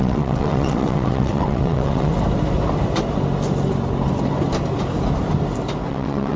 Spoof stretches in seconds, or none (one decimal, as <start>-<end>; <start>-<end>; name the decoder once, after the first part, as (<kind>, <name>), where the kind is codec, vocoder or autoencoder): 0.0-2.1 (vocoder, WaveNeXt); 5.9-6.4